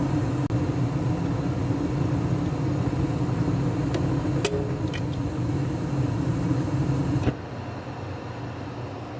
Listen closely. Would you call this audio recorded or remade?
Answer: recorded